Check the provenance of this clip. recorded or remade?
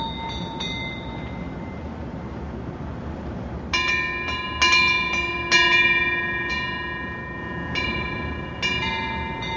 recorded